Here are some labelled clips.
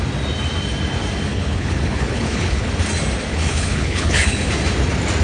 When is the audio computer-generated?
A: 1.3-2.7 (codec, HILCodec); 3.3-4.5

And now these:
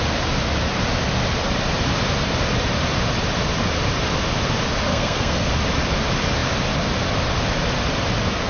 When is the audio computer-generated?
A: 4.9-5.5 (codec, SNAC)

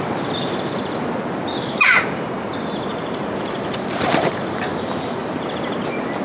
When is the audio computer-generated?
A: 2.9-4.6 (vocoder, BigVGAN v2); 5.2-5.8

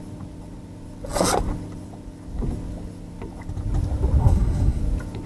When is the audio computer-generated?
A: 4.2-4.8 (codec, SNAC)

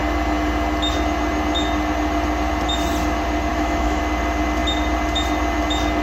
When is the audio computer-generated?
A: 3.5-4.0 (autoencoder, DAC-VAE)

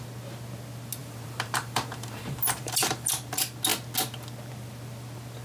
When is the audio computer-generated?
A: 1.0-3.1 (vocoder, BigVGAN v2)

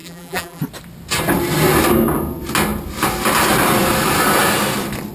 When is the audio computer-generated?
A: 0.0-0.6 (vocoder, BigVGAN v2)

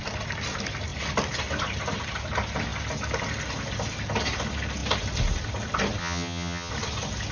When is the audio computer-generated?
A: 6.0-6.7 (vocoder, HiFi-GAN)